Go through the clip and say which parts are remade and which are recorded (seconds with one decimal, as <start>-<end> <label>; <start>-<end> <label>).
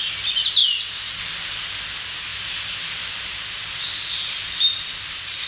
0.0-2.3 recorded; 2.3-5.5 remade